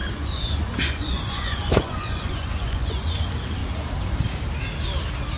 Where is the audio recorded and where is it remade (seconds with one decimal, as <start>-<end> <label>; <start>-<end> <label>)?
0.0-3.2 remade; 3.2-5.4 recorded